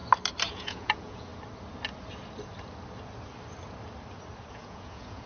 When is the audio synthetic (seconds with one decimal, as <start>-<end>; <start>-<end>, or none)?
0.5-1.3; 4.5-5.3